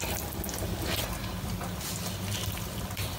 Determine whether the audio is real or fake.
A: real